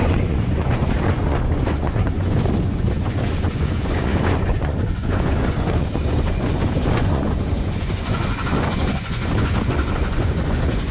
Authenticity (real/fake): fake